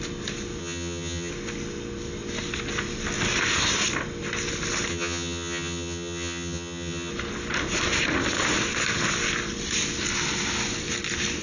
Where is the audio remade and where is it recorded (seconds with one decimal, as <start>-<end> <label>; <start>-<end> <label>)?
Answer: 0.0-0.6 recorded; 0.6-1.3 remade; 1.3-4.9 recorded; 4.9-7.1 remade; 7.1-11.4 recorded